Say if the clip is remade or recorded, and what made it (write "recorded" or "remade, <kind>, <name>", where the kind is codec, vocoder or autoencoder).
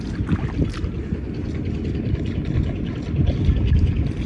recorded